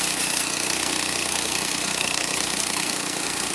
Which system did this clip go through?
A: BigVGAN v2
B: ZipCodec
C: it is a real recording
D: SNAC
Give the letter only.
D